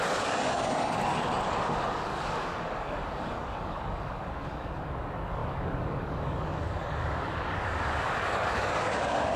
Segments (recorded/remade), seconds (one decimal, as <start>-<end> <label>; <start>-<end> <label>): 0.0-9.4 remade

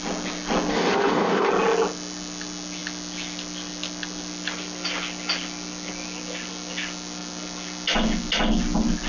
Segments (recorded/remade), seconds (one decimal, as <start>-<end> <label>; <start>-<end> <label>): 0.0-0.7 recorded; 0.7-1.5 remade; 1.5-9.1 recorded

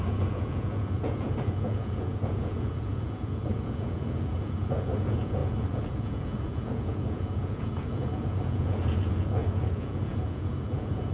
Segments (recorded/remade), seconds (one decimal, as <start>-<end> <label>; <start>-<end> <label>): 0.0-11.1 remade